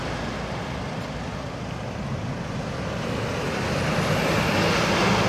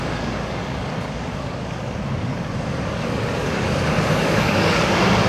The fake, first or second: second